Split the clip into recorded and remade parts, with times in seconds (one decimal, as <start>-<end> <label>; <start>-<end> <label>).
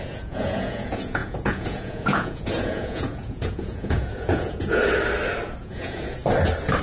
0.0-4.8 remade; 4.8-5.6 recorded; 5.6-6.2 remade; 6.2-6.8 recorded